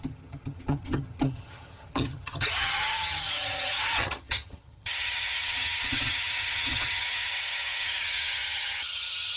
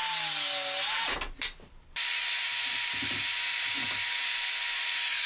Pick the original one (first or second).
second